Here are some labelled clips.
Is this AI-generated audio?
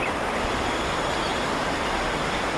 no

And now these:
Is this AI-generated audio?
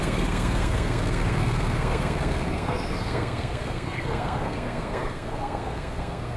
yes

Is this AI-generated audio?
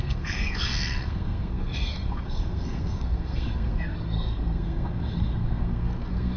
yes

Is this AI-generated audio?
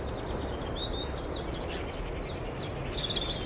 no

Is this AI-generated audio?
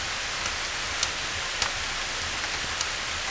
no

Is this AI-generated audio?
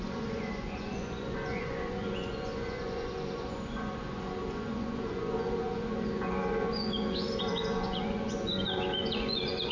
yes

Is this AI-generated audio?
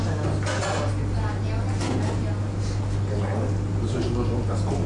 no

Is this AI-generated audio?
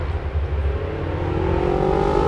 no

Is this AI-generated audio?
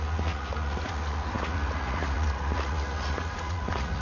yes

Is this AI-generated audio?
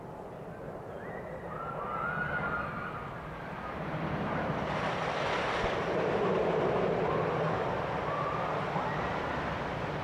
no